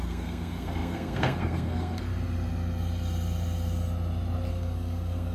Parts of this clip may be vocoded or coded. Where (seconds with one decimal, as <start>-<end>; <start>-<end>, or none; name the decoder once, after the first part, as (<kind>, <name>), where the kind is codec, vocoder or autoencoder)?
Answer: 0.0-2.1 (codec, SNAC); 4.5-5.3